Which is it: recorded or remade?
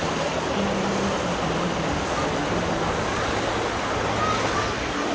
recorded